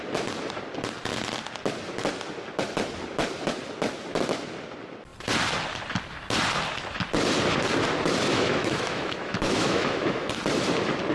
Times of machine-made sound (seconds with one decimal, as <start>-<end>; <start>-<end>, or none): 8.3-10.3